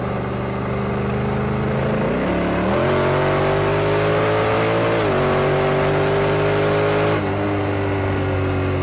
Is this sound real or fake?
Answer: real